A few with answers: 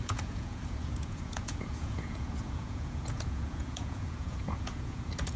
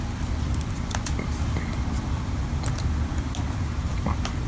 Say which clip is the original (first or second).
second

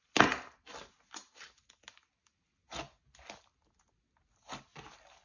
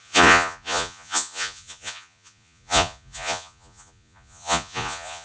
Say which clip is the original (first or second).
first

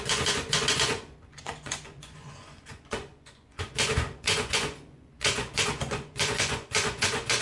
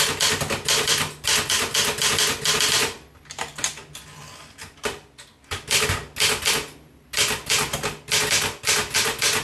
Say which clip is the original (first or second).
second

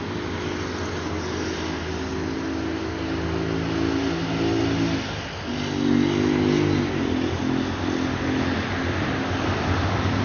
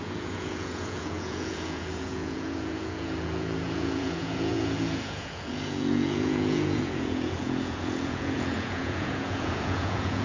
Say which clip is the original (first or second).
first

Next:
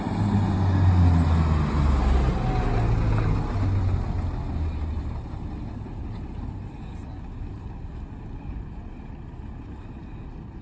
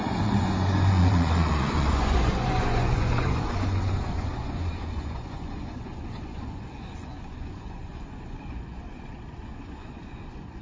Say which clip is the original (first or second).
first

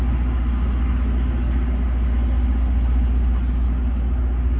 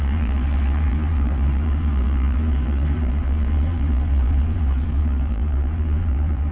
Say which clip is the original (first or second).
first